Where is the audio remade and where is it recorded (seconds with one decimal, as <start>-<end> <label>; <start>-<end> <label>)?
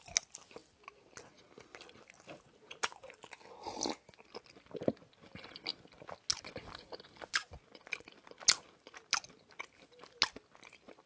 0.0-0.6 recorded; 0.6-1.2 remade; 1.2-11.1 recorded